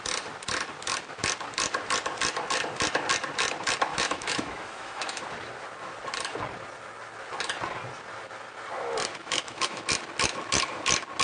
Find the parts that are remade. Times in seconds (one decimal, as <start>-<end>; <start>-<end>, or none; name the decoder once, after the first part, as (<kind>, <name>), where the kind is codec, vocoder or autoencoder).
3.9-5.2 (autoencoder, DAC-VAE); 9.2-9.8